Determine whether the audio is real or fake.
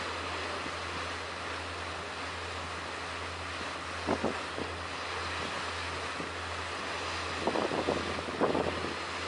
real